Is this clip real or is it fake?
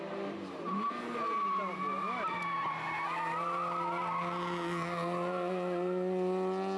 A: real